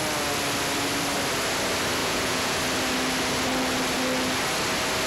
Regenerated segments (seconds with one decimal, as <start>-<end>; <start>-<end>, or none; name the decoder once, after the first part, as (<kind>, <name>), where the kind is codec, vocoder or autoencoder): 2.0-2.6 (vocoder, Vocos)